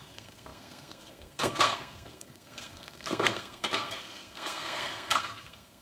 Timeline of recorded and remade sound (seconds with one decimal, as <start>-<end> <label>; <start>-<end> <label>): 0.0-5.8 remade